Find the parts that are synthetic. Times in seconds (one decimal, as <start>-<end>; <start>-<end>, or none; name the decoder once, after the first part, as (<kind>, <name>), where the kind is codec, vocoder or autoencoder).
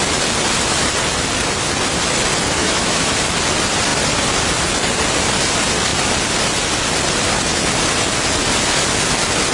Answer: 2.6-3.1 (autoencoder, DAC-VAE)